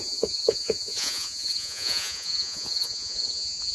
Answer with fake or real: fake